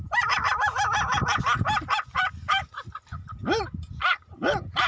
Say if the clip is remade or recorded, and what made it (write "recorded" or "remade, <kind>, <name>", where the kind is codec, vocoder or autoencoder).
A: recorded